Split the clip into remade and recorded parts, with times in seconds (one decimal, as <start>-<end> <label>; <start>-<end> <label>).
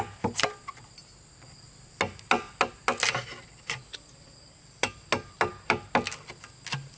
0.0-7.0 recorded